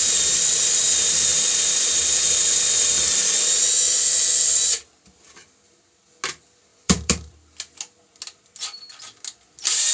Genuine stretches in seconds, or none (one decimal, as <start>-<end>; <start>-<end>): 0.0-1.3; 2.0-6.7; 7.3-9.9